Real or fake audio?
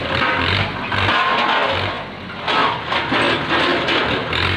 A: real